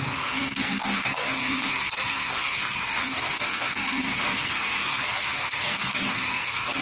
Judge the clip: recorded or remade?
remade